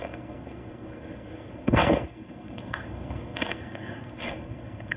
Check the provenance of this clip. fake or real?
fake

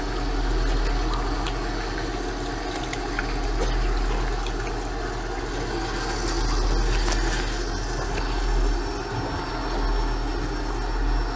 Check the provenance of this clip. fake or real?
real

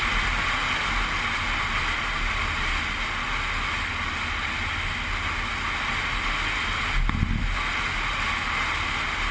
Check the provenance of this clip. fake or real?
real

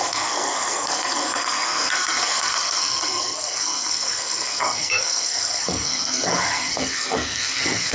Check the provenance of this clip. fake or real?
fake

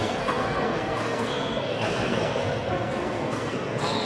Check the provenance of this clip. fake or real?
fake